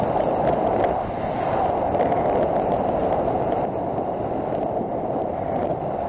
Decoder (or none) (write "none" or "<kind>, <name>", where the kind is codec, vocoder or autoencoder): vocoder, BigVGAN v2